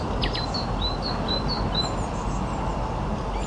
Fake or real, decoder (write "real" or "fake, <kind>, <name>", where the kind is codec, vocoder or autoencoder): real